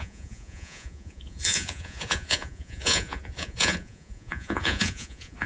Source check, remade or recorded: remade